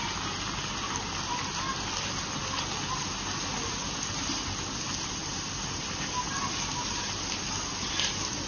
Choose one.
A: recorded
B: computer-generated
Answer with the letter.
A